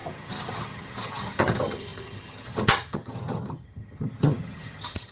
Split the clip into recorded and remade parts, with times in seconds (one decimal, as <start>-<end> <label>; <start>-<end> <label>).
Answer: 0.0-5.1 remade